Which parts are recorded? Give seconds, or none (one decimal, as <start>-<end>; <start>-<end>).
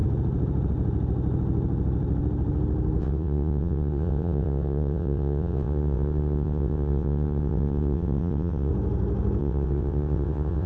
0.0-3.0; 8.7-9.4